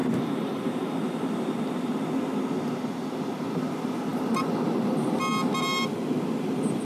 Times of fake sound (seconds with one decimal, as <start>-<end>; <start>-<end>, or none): 4.1-5.2